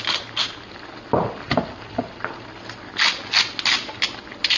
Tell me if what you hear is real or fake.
real